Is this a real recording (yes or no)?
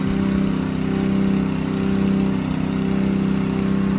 yes